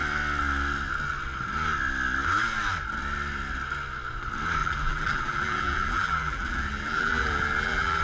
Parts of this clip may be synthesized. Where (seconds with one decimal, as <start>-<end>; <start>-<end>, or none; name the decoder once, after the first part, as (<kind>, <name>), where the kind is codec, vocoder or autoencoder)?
4.6-8.0 (vocoder, BigVGAN v2)